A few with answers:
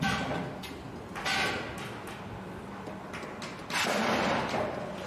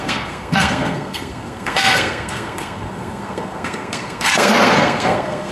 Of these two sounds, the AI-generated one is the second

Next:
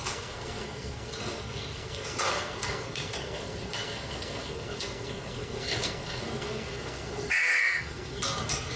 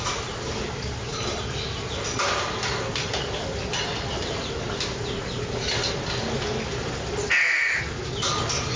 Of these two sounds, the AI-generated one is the first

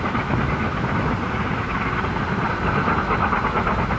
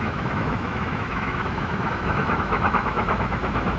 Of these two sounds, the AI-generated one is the second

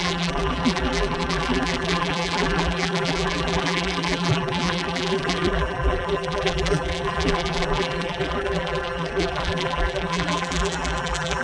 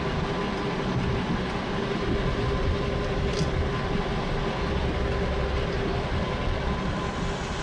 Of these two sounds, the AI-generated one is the first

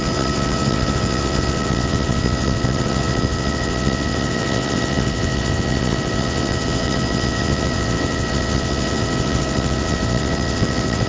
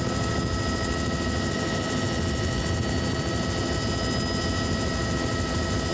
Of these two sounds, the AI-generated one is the first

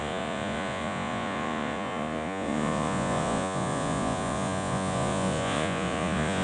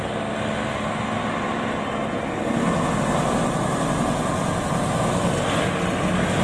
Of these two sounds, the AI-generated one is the first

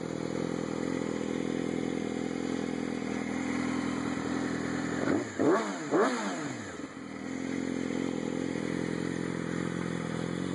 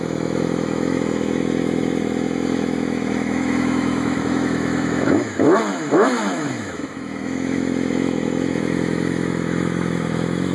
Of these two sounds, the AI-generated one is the second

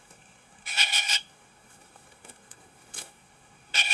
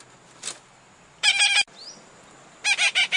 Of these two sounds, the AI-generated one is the first